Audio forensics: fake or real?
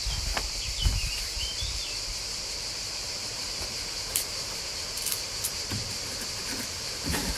fake